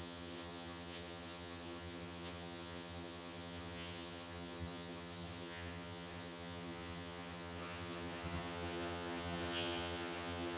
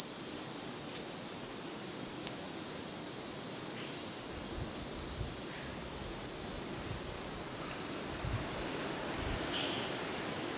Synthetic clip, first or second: first